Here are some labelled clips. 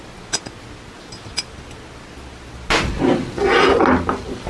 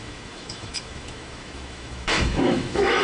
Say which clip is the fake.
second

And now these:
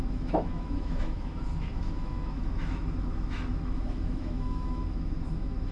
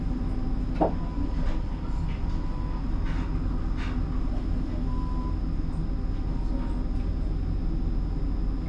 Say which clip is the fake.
first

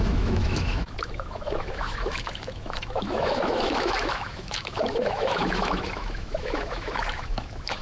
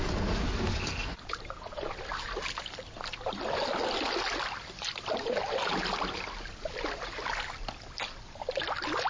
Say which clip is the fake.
first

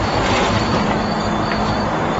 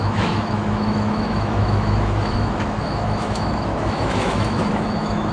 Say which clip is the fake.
second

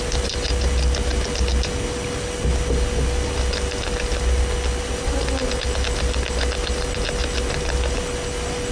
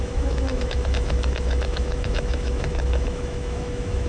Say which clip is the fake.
second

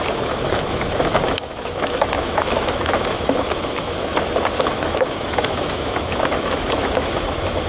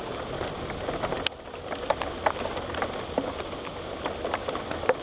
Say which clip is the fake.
first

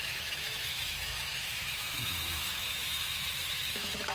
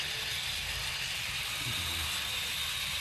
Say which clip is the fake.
first